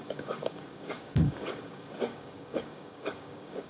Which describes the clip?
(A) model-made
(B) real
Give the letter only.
A